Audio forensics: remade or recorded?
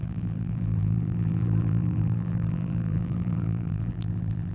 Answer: remade